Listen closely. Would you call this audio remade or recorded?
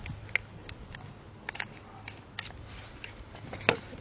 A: recorded